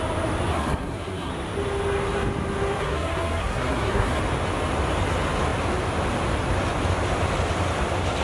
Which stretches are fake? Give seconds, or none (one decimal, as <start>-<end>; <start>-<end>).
0.5-1.3; 2.8-4.2